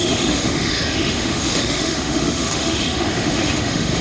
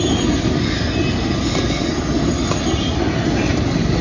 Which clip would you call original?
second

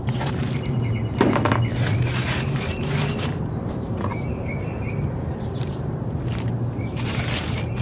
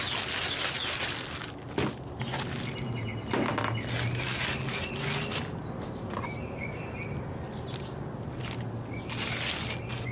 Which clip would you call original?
second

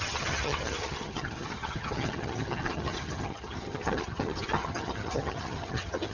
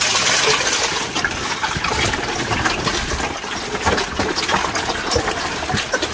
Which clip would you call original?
second